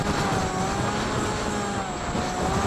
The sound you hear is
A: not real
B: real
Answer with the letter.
B